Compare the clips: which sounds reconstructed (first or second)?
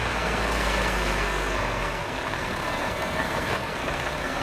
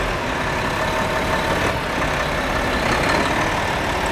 first